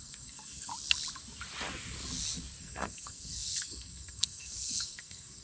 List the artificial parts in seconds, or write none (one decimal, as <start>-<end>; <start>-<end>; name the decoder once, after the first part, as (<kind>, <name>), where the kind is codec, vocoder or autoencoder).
0.0-0.7 (codec, SNAC); 2.6-5.4